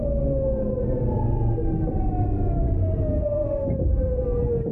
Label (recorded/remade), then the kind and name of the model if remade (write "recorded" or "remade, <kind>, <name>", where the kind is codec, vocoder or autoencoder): recorded